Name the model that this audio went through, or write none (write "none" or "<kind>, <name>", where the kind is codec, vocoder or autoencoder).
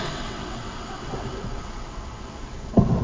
vocoder, WaveNeXt